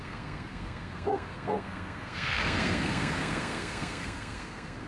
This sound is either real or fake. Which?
fake